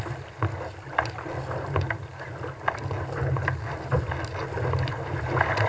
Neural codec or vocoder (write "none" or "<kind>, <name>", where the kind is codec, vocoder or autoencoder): none